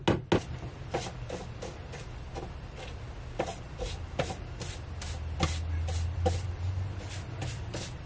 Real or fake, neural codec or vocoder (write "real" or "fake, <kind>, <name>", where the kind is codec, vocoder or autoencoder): real